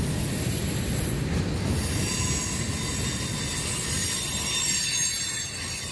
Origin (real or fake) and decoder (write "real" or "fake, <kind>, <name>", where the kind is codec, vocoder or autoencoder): real